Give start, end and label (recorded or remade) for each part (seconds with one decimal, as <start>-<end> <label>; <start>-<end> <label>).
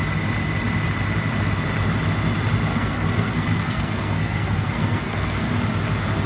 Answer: 0.0-2.7 recorded; 2.7-5.5 remade; 5.5-6.3 recorded